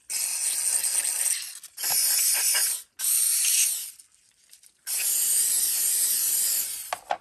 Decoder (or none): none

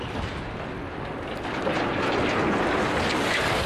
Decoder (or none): none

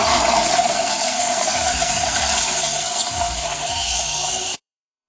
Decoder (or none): codec, SNAC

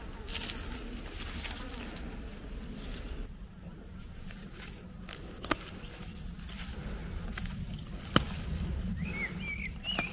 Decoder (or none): none